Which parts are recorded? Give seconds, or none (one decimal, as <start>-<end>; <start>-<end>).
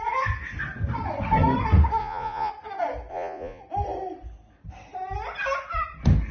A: 0.0-2.0; 2.5-3.1; 3.6-6.3